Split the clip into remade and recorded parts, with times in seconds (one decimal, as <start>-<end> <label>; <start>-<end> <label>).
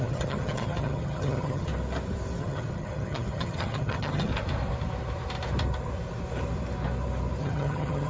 0.0-1.7 remade; 1.7-2.4 recorded; 2.4-4.3 remade; 4.3-7.4 recorded; 7.4-8.1 remade